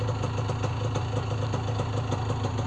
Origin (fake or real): real